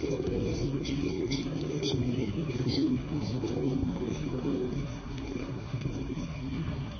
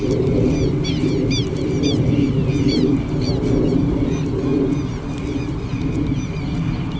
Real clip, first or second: second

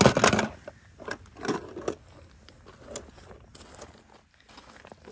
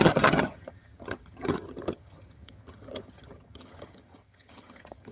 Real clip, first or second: first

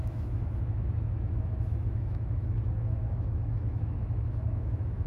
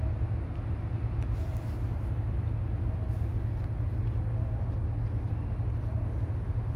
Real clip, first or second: second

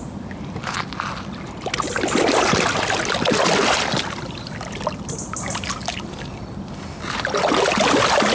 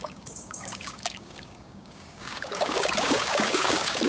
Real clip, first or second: first